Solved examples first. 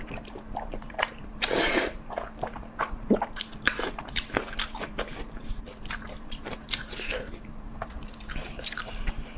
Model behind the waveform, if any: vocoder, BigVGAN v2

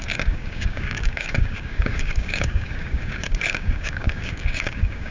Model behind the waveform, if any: codec, DAC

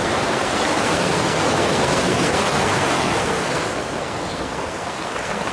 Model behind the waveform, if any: codec, SNAC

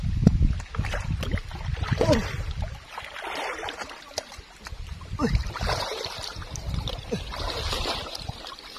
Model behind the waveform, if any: vocoder, BigVGAN v2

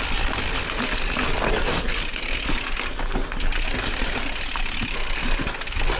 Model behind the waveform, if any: none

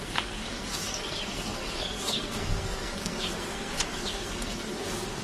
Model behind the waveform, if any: codec, SNAC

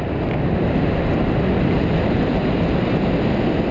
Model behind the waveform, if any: none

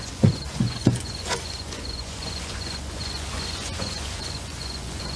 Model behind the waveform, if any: vocoder, Vocos